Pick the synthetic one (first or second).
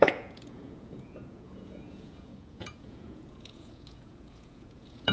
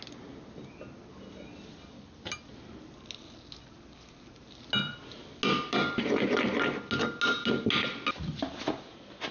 first